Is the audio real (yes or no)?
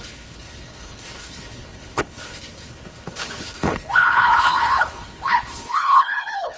no